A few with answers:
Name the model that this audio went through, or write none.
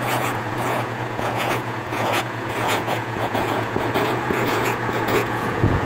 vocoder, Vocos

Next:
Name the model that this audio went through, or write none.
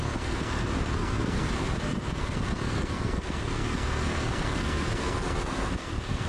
codec, SNAC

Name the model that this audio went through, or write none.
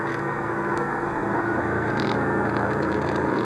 codec, SNAC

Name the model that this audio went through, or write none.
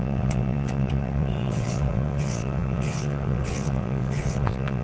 vocoder, WaveNeXt